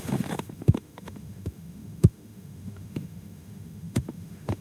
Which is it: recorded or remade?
remade